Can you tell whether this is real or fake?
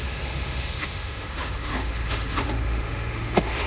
fake